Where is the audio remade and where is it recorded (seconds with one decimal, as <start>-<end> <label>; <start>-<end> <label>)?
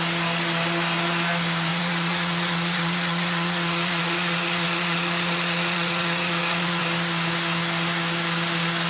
0.0-1.7 recorded; 1.7-6.8 remade; 6.8-8.9 recorded